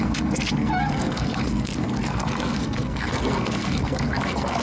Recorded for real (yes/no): no